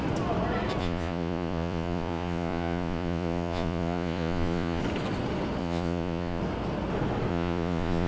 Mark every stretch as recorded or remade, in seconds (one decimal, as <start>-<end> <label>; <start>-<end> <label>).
0.0-0.8 recorded; 0.8-4.8 remade; 4.8-5.6 recorded; 5.6-6.4 remade; 6.4-7.3 recorded; 7.3-8.1 remade